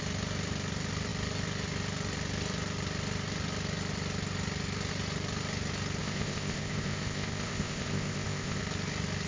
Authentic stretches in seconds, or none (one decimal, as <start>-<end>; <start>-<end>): 0.0-6.0; 8.6-9.3